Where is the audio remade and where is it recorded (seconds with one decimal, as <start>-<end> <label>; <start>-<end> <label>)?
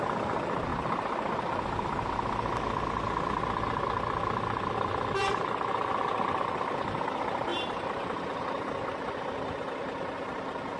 0.0-7.5 recorded; 7.5-8.4 remade; 8.4-10.8 recorded